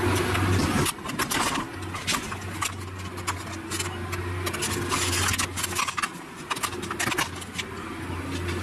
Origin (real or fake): real